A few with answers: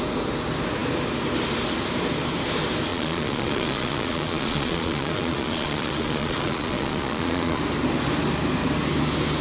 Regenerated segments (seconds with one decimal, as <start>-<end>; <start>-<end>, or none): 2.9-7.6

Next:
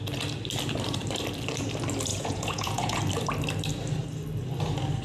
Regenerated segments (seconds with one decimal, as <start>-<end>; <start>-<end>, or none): 2.1-3.0

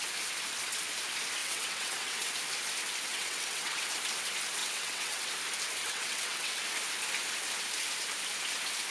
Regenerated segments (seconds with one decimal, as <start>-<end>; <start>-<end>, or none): 1.4-2.3; 3.1-3.9; 4.6-5.3; 5.8-6.6

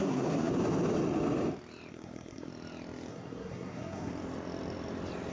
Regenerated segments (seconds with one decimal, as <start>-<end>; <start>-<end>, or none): 0.0-0.5; 1.9-2.5; 3.1-4.1

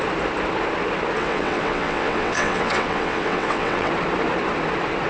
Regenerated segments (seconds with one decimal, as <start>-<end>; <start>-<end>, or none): 1.2-3.9